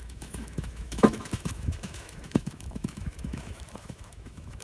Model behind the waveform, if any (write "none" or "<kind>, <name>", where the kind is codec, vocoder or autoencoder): autoencoder, DAC-VAE